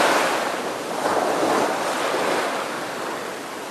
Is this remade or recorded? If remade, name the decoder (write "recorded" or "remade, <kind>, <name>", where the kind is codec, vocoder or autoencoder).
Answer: recorded